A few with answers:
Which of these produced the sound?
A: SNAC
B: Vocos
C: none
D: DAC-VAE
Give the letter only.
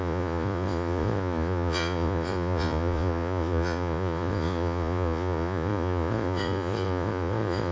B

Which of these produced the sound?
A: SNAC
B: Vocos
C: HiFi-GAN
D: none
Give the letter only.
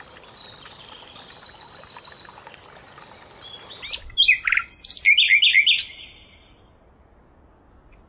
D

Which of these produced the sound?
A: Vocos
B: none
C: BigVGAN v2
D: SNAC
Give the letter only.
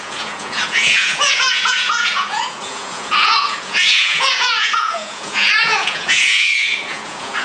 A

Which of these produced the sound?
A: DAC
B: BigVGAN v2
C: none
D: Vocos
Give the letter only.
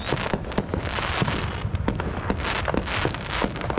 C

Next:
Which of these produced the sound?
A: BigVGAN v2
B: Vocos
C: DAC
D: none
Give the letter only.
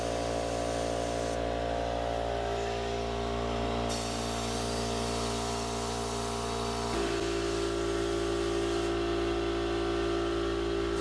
D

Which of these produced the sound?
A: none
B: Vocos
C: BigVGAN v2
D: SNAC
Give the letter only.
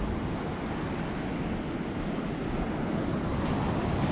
A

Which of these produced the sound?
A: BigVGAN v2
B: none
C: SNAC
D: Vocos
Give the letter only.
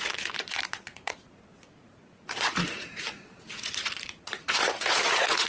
D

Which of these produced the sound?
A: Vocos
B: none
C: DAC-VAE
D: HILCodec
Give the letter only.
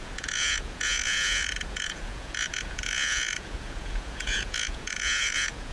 A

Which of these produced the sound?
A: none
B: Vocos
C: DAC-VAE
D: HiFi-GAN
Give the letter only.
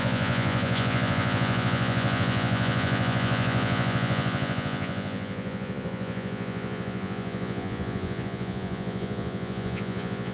B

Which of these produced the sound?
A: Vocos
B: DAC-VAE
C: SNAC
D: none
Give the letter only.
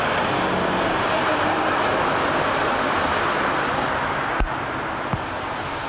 D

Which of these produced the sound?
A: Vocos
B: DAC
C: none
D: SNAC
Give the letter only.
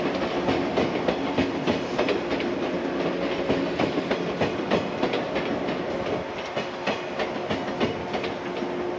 C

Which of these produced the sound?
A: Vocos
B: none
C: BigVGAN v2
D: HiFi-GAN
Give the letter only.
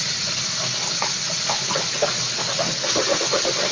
B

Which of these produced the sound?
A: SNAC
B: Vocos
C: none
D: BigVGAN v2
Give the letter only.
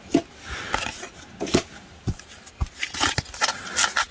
C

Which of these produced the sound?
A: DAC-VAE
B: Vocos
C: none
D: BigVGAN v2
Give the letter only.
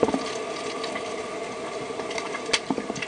C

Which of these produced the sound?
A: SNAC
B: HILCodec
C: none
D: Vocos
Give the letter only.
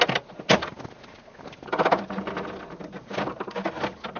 C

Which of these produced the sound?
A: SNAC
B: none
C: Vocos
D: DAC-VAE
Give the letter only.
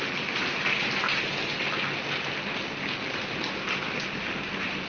B